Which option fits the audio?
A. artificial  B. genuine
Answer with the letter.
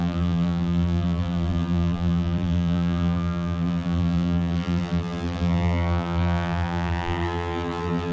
A